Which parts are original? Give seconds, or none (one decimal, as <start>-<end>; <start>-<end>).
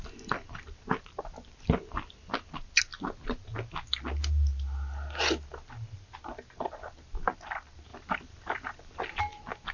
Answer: 0.0-9.7